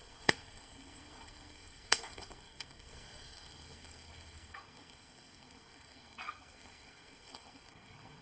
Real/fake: fake